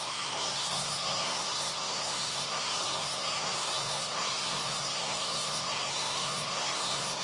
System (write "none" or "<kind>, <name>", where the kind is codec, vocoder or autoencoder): codec, SNAC